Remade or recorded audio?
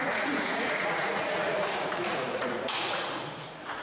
remade